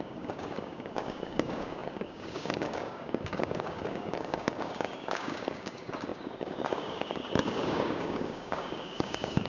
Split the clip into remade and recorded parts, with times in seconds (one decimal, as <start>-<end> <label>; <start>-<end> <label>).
0.0-9.5 remade